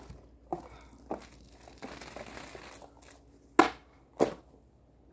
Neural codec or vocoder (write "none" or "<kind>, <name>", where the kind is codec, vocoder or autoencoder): none